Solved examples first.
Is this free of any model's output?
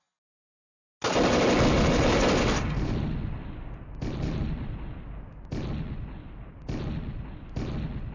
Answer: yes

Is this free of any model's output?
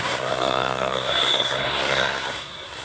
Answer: no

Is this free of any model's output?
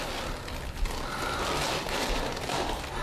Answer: yes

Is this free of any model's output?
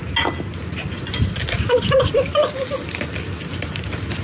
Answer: yes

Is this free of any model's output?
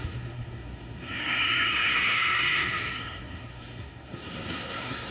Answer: no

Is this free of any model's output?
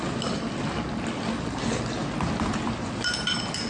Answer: yes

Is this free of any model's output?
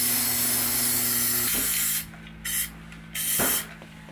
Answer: yes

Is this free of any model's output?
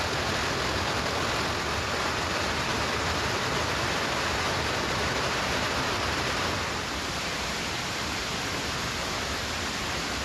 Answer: yes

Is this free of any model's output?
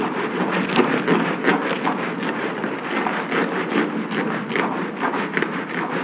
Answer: yes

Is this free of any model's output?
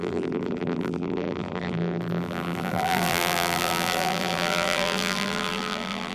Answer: no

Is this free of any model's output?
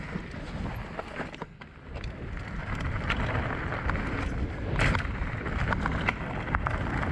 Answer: yes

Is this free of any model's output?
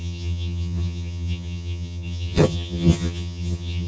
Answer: no